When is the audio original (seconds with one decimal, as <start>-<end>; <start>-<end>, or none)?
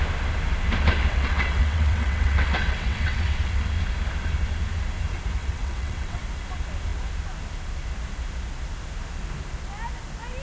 0.0-1.1; 3.6-5.4; 6.2-10.4